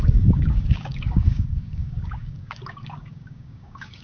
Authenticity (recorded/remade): remade